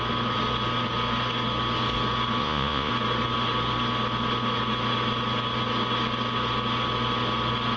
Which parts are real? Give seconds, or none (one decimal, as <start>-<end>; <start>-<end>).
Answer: 0.0-2.4; 2.9-7.8